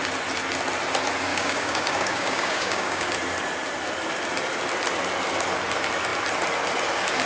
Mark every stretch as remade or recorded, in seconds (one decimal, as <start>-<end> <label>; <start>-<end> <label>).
0.0-1.3 recorded; 1.3-3.1 remade; 3.1-7.3 recorded